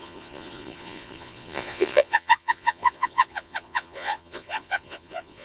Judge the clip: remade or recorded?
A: remade